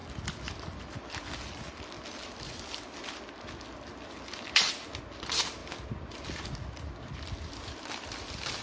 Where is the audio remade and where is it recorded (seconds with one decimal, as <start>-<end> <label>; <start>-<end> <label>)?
0.0-8.6 recorded